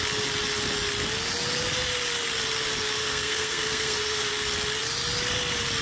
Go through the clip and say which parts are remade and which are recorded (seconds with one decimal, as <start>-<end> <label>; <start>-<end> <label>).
0.0-3.0 recorded; 3.0-4.3 remade; 4.3-5.8 recorded